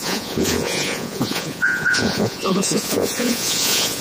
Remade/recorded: remade